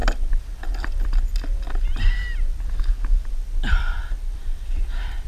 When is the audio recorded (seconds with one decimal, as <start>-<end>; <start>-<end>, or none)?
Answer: 0.0-2.8